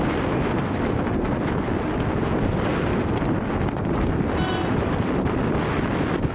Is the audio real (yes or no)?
yes